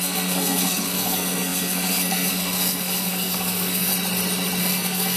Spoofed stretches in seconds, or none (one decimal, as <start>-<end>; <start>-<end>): 0.0-3.9; 4.6-5.2